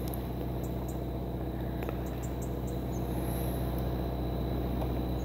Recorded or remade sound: recorded